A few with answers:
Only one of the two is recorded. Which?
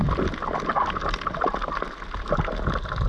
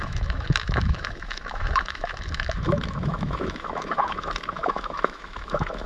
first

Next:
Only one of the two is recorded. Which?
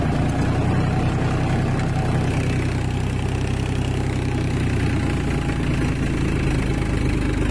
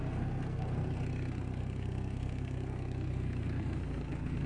first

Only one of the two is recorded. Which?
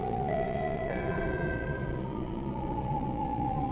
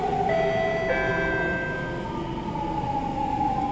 second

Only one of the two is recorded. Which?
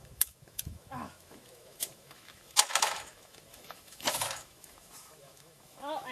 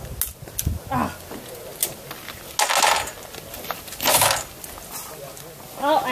second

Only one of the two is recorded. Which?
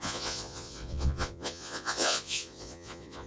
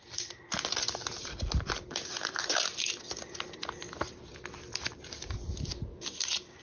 second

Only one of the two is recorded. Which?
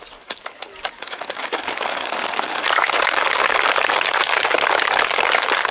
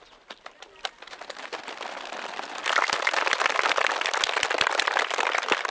second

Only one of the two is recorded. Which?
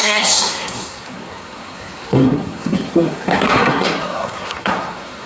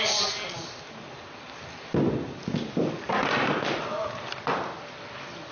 second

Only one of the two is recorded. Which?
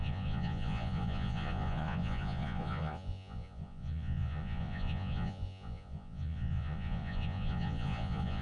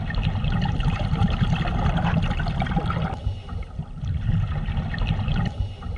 second